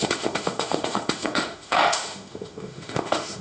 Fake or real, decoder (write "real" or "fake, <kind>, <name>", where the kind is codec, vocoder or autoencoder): fake, autoencoder, DAC-VAE